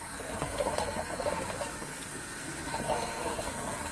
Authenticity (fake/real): fake